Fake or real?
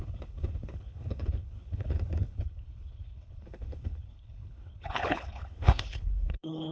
fake